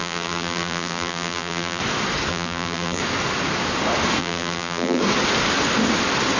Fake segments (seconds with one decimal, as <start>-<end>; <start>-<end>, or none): 0.0-1.8; 2.3-3.0; 4.2-5.0